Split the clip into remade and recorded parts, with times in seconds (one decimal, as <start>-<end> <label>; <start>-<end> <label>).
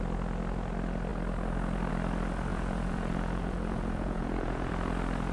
0.0-2.5 recorded; 2.5-4.7 remade; 4.7-5.3 recorded